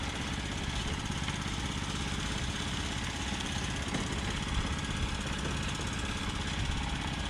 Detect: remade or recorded recorded